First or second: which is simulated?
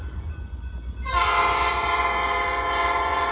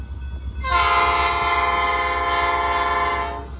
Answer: first